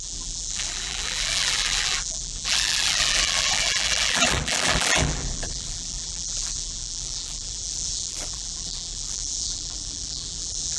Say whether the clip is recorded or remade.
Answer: remade